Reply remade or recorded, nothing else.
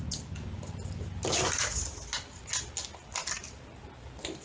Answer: recorded